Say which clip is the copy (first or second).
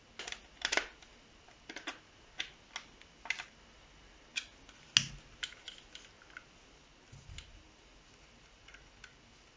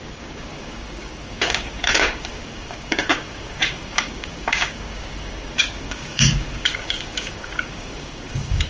second